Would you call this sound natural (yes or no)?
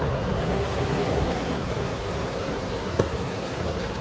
no